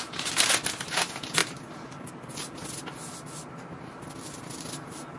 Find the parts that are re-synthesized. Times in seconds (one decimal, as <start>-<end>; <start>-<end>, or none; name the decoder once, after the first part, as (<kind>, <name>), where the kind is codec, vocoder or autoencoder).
none